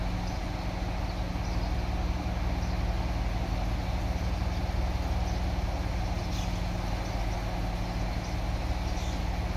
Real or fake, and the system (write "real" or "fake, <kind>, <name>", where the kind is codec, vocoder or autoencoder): real